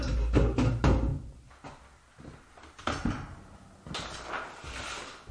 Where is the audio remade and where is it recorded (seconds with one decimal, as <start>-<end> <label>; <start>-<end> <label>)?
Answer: 0.0-5.3 recorded